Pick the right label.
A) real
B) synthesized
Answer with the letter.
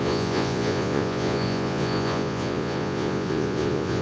B